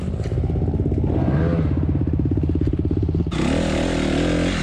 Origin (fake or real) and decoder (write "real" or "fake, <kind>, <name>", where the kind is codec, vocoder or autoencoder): real